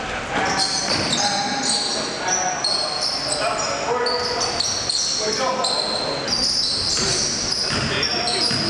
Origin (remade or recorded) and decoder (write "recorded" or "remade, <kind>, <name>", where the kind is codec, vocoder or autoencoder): recorded